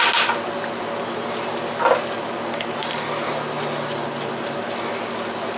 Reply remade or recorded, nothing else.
recorded